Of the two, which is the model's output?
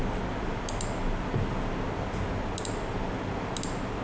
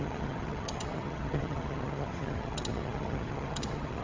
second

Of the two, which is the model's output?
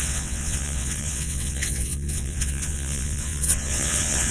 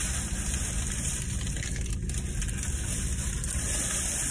first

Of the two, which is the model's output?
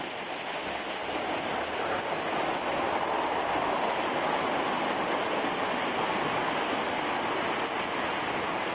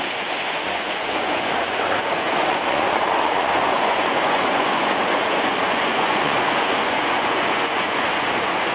second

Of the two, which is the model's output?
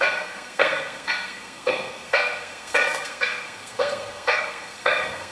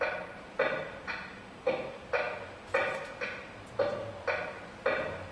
first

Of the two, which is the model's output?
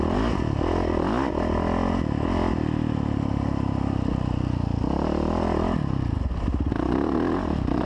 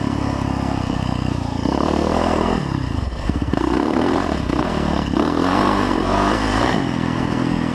second